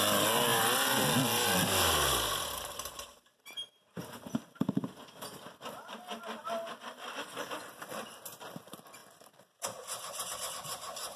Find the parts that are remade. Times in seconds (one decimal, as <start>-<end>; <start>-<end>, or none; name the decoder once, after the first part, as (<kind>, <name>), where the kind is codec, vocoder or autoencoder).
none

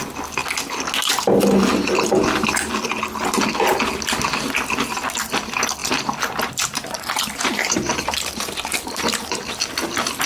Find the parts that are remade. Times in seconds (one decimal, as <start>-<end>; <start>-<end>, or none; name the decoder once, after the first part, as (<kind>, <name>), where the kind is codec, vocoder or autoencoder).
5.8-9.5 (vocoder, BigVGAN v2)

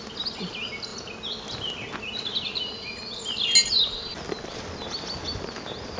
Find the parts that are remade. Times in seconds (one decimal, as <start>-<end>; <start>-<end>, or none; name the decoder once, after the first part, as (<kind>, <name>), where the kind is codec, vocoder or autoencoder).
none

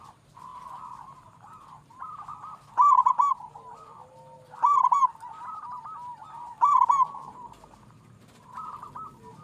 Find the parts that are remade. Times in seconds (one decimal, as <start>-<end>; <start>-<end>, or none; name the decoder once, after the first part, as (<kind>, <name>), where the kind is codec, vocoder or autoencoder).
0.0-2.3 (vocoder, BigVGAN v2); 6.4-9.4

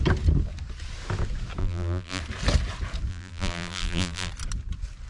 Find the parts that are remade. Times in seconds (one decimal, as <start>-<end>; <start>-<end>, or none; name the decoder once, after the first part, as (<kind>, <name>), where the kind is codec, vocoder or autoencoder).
1.6-2.2 (vocoder, BigVGAN v2); 3.1-4.3

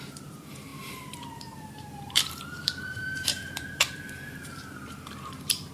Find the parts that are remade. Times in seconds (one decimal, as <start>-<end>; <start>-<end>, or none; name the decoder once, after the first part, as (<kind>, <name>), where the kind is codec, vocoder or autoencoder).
0.0-5.7 (vocoder, BigVGAN v2)

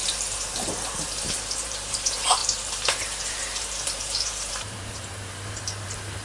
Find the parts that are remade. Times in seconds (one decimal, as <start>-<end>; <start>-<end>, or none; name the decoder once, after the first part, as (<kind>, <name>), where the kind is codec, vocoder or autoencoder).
0.0-6.2 (vocoder, BigVGAN v2)